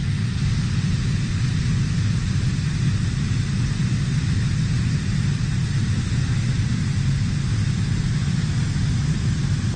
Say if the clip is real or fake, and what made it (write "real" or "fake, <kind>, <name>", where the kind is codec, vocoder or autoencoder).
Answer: real